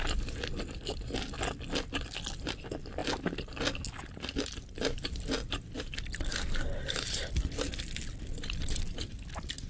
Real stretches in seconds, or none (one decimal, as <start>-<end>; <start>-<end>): 0.0-9.7